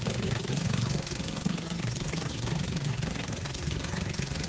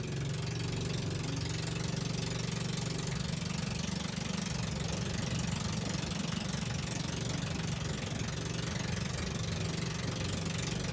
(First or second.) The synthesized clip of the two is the first